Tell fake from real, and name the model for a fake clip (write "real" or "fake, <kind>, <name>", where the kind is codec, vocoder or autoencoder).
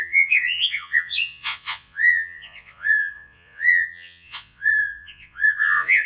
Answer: fake, vocoder, Vocos